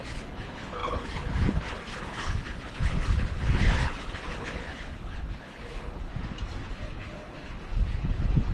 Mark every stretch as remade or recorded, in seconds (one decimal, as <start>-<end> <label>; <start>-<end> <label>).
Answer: 0.0-6.1 remade; 6.1-6.7 recorded; 6.7-8.5 remade